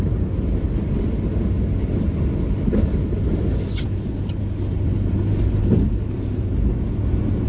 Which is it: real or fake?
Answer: real